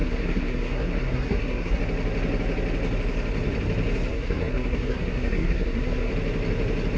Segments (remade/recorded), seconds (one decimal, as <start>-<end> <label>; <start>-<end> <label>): 0.0-1.8 remade; 1.8-4.1 recorded; 4.1-6.1 remade; 6.1-7.0 recorded